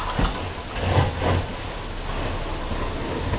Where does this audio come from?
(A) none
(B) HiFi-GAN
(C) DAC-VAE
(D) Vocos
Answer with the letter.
A